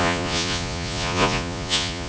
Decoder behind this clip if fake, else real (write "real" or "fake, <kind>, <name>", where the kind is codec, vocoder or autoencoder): fake, vocoder, Vocos